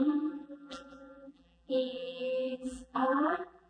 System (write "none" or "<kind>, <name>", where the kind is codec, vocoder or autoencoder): vocoder, BigVGAN v2